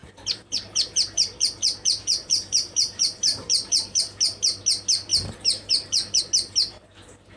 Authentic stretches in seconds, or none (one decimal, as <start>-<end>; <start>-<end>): 4.0-5.1; 6.2-7.4